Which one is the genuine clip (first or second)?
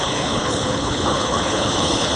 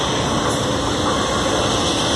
second